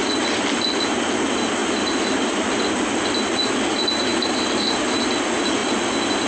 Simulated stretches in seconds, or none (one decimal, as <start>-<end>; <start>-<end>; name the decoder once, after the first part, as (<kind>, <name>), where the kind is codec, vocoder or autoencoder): 1.6-2.7 (vocoder, BigVGAN v2); 4.1-5.1